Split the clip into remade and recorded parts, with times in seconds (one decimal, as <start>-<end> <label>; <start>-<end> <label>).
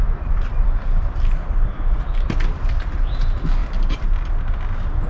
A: 0.0-3.1 remade; 3.1-3.6 recorded; 3.6-4.3 remade; 4.3-5.1 recorded